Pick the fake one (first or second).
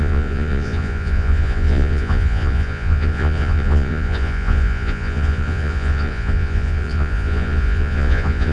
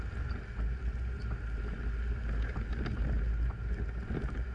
first